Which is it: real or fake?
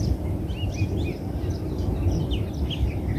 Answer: real